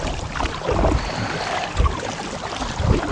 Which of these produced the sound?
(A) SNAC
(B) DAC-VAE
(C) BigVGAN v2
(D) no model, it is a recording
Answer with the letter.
C